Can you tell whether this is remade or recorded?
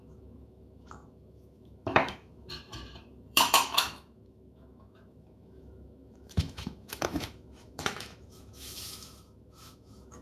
remade